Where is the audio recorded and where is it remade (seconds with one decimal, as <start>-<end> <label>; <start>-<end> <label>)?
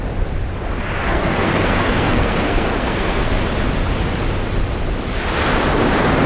0.0-1.1 recorded; 1.1-3.3 remade; 3.3-6.3 recorded